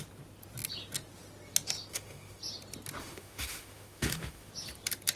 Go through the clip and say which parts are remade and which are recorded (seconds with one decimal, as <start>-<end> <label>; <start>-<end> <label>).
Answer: 0.0-1.9 recorded; 1.9-2.4 remade; 2.4-3.0 recorded; 3.0-4.5 remade; 4.5-5.2 recorded